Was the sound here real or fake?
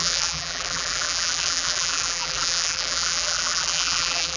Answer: fake